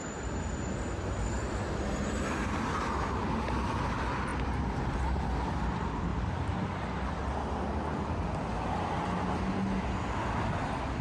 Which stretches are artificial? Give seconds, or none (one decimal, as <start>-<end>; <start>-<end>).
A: 0.0-1.5